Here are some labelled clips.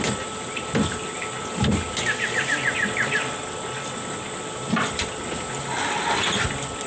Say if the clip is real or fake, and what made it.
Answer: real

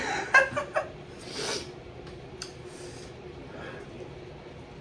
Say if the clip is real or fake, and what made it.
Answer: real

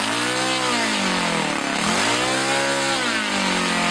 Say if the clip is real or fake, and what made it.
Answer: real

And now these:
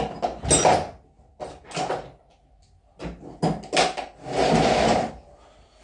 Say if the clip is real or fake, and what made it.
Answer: real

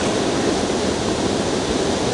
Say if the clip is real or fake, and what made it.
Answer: real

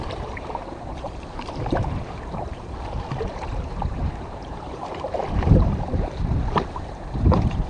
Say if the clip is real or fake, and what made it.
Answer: fake, vocoder, BigVGAN v2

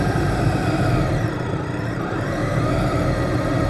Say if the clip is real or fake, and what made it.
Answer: fake, vocoder, BigVGAN v2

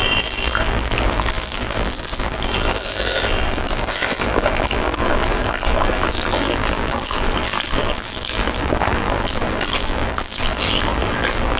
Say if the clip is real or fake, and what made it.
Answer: fake, vocoder, BigVGAN v2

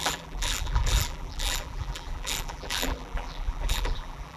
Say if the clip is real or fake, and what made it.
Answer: fake, vocoder, BigVGAN v2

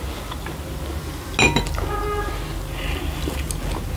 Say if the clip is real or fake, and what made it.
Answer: real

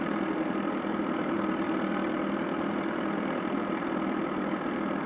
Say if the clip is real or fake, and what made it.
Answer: fake, vocoder, BigVGAN v2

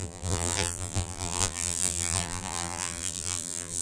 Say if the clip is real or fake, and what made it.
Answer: fake, vocoder, BigVGAN v2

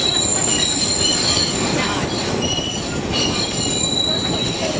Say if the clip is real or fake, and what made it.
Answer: real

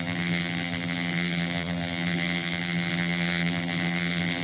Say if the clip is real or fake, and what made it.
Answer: fake, vocoder, BigVGAN v2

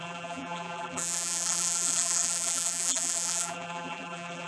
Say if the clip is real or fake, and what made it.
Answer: fake, vocoder, BigVGAN v2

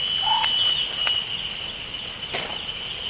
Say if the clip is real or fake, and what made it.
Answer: real